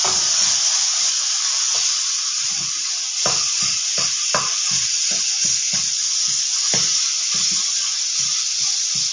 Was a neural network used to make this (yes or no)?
no